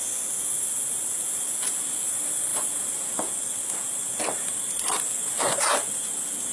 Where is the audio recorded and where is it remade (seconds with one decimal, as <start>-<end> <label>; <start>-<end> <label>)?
0.0-6.5 recorded